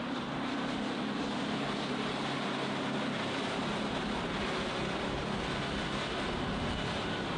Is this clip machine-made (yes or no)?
no